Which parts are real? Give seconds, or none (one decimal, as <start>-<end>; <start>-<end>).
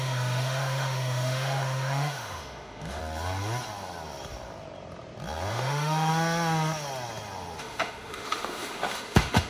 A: 3.0-5.5; 6.1-7.6